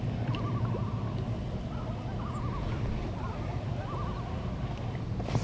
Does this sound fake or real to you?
real